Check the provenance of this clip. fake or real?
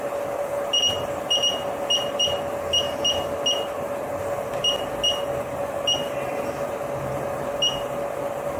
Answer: real